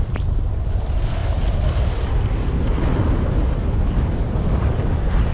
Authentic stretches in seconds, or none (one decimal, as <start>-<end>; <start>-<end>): 1.2-4.3